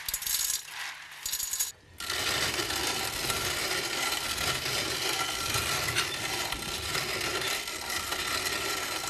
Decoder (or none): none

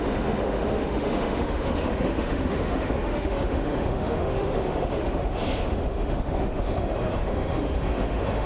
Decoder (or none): autoencoder, DAC-VAE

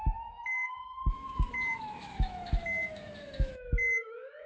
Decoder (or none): autoencoder, DAC-VAE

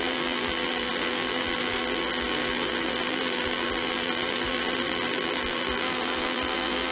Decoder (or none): vocoder, BigVGAN v2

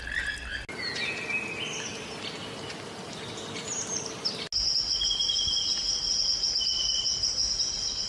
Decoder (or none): none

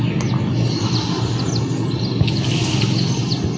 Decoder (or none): none